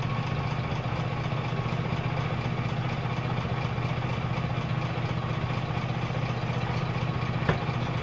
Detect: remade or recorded recorded